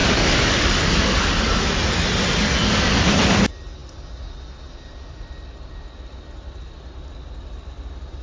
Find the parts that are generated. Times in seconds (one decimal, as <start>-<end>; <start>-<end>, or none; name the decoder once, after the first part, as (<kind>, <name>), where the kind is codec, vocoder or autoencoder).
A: 0.0-1.3 (codec, DAC)